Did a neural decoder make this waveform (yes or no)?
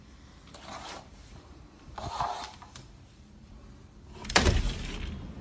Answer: yes